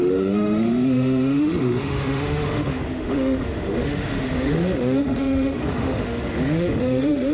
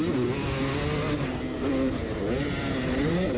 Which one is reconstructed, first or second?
first